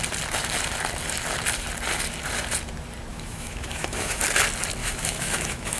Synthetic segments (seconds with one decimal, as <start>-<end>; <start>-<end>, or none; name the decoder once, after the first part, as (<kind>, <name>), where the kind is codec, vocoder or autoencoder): 3.1-4.2 (autoencoder, DAC-VAE); 4.8-5.8

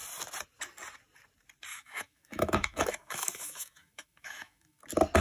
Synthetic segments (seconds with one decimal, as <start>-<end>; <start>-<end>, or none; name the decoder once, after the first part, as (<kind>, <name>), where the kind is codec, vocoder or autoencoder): 1.7-4.8 (autoencoder, DAC-VAE)